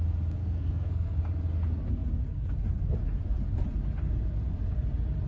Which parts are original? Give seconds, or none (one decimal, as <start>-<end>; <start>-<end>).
0.0-0.4; 1.2-5.3